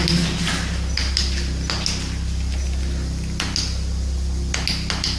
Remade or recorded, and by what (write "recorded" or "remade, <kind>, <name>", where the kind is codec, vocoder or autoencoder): recorded